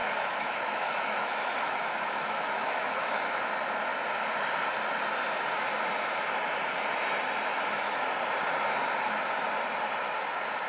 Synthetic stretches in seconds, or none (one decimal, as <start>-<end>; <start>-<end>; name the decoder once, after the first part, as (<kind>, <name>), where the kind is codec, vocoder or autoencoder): 0.0-3.5 (autoencoder, DAC-VAE); 7.5-8.1